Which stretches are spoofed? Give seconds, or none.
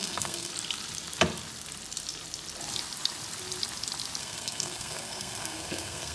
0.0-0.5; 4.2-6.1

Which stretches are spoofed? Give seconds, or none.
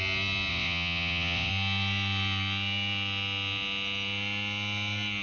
0.5-1.5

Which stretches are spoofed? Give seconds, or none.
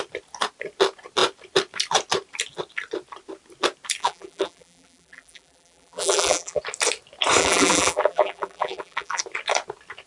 4.0-6.6; 7.4-9.2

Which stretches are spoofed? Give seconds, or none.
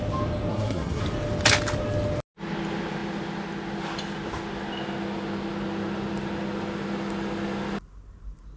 0.5-1.0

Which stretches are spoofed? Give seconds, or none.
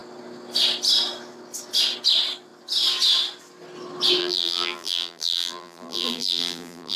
4.2-7.0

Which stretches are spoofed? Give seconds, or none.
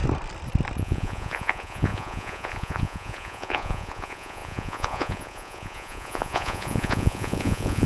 0.8-7.9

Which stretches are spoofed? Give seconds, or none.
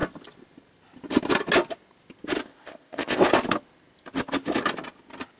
2.4-3.3